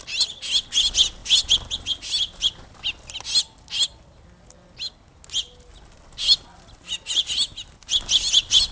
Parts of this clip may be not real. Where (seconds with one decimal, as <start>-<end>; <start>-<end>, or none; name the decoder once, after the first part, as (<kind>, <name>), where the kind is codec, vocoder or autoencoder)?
none